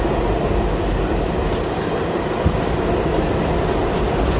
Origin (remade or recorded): recorded